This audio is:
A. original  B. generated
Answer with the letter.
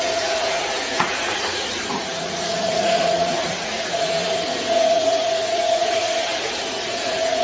B